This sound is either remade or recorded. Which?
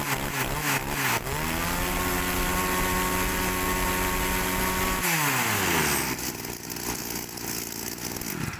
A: recorded